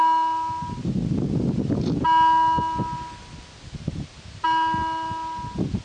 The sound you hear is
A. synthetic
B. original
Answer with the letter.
B